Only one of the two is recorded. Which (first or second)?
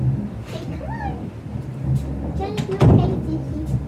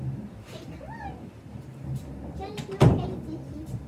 first